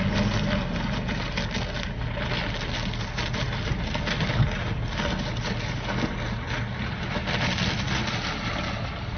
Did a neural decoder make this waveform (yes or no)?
no